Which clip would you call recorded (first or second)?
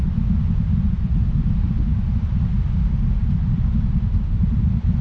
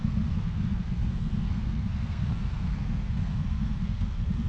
first